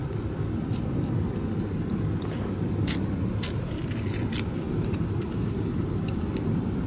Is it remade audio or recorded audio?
recorded